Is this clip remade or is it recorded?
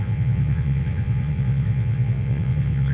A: remade